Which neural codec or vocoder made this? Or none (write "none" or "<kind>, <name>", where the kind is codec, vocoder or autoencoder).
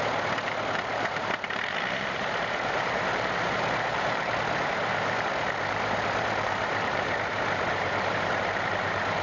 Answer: vocoder, BigVGAN v2